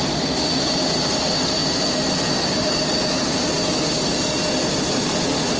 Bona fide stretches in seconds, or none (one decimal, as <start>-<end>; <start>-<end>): 0.0-5.6